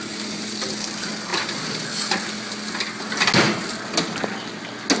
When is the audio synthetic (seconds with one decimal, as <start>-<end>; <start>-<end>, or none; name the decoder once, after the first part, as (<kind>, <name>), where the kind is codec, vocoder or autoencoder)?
none